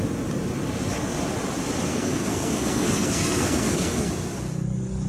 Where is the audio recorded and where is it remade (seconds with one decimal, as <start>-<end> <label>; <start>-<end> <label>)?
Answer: 0.0-1.9 recorded; 1.9-4.1 remade; 4.1-5.1 recorded